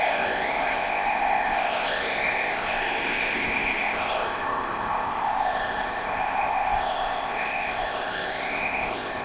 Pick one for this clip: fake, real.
fake